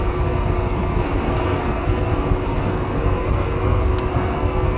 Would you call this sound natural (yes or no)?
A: no